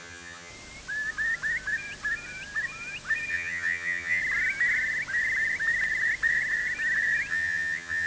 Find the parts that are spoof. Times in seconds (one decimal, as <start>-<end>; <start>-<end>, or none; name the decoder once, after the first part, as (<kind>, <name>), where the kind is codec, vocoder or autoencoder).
0.0-0.5 (vocoder, HiFi-GAN); 3.3-4.2; 7.3-8.1